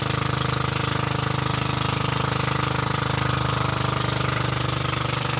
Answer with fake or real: fake